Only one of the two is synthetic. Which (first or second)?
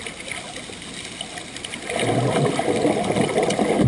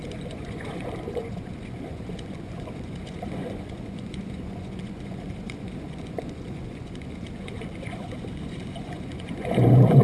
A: second